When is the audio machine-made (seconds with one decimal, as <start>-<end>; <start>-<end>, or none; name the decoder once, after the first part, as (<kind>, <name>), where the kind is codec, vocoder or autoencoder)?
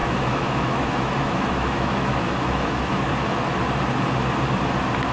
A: 0.0-3.1 (autoencoder, DAC-VAE)